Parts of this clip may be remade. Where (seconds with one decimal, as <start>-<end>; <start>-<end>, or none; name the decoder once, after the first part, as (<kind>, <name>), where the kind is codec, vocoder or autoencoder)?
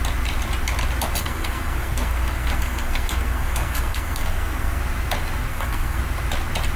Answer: 1.2-4.8 (codec, SNAC); 5.5-6.0